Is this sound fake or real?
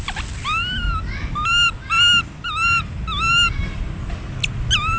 real